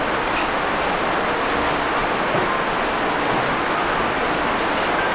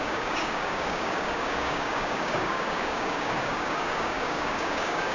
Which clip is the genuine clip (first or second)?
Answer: first